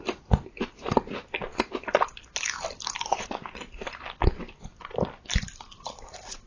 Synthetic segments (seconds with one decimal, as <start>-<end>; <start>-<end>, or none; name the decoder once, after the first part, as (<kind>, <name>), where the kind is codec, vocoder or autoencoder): none